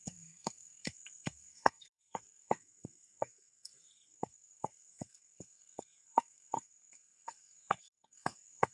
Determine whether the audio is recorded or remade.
remade